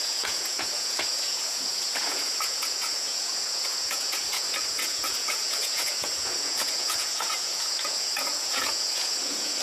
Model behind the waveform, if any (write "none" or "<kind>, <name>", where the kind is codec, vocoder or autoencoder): vocoder, Vocos